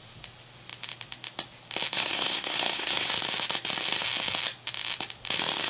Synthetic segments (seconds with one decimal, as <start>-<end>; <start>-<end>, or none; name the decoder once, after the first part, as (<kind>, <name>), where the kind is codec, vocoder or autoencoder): 1.9-3.1 (codec, SNAC)